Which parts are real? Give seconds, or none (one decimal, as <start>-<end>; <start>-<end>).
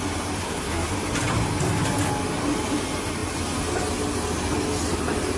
0.0-0.4; 0.9-5.4